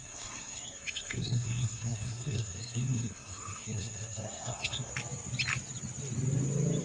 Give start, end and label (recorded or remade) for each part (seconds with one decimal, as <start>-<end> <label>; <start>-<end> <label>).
0.0-4.9 remade; 4.9-6.8 recorded